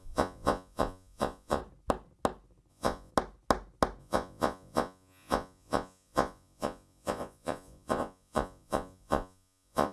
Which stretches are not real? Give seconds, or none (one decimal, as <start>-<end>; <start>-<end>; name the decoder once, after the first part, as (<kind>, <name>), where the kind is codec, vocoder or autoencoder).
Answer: 0.0-1.6 (vocoder, Vocos); 2.7-3.1; 4.0-9.9